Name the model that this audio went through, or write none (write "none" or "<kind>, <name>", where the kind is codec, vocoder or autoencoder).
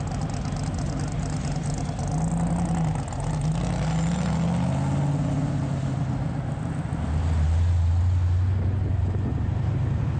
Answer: none